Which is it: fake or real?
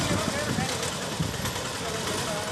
real